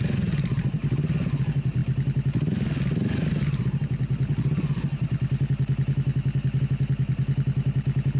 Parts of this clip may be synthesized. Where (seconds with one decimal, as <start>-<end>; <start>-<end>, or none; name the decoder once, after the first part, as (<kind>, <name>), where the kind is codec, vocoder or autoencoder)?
none